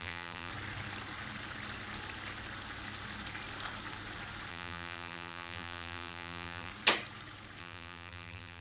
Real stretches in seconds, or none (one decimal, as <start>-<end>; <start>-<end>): 0.5-4.5; 6.7-7.6